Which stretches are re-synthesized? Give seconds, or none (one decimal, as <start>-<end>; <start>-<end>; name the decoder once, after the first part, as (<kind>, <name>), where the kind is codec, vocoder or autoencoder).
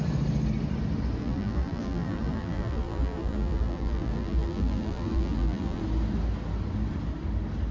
1.2-5.8 (vocoder, BigVGAN v2)